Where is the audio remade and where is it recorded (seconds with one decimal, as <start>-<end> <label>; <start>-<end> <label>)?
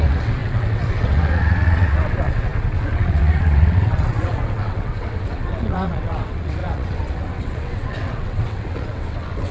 0.0-9.5 remade